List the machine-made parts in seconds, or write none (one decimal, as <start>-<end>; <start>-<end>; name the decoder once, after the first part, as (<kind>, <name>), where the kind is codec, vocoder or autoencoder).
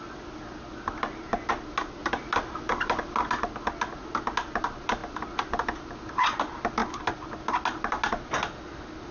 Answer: none